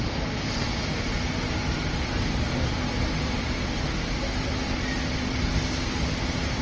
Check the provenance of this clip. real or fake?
real